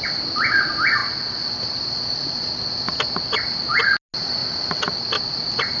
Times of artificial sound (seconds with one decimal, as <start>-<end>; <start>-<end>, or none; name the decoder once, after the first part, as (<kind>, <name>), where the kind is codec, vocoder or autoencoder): none